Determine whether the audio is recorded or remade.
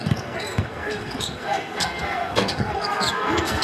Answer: remade